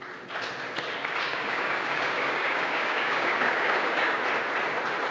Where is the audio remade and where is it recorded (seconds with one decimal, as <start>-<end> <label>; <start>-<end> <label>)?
0.0-1.3 recorded; 1.3-4.2 remade; 4.2-5.1 recorded

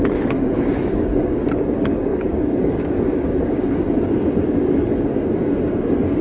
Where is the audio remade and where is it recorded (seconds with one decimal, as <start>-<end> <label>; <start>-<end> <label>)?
0.0-6.2 remade

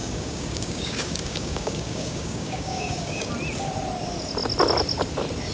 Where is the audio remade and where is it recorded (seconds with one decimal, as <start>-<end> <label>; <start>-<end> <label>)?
0.0-3.3 remade; 3.3-5.5 recorded

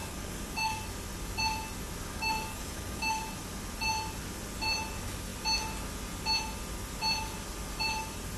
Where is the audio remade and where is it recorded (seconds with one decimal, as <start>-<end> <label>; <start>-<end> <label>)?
0.0-0.8 remade; 0.8-2.1 recorded; 2.1-3.2 remade; 3.2-8.4 recorded

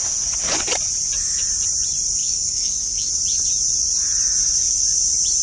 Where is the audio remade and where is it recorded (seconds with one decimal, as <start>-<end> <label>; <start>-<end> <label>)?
0.0-2.2 recorded; 2.2-3.1 remade; 3.1-5.4 recorded

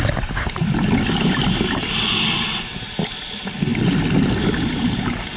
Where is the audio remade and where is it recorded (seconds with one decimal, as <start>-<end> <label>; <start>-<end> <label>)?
0.0-5.4 recorded

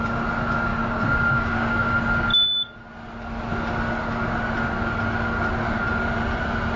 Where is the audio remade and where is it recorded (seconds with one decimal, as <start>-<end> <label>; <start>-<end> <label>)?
0.0-0.7 recorded; 0.7-1.9 remade; 1.9-6.8 recorded

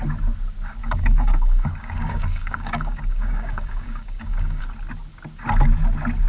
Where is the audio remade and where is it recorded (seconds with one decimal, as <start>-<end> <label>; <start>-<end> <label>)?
0.0-0.8 recorded; 0.8-4.6 remade; 4.6-6.3 recorded